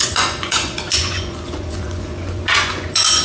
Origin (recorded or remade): remade